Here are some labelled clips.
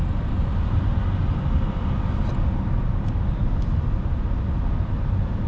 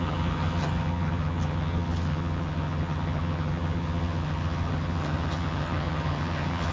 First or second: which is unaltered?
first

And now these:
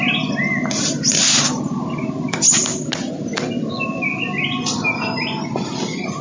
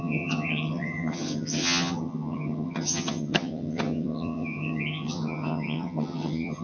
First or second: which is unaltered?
first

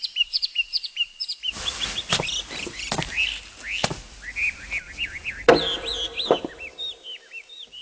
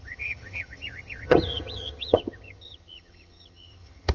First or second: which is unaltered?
first